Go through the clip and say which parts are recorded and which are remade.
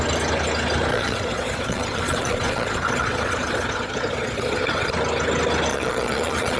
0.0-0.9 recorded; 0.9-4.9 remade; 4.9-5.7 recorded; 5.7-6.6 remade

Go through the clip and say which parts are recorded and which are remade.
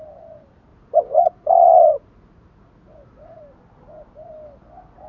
0.0-0.7 recorded; 0.7-3.4 remade; 3.4-5.1 recorded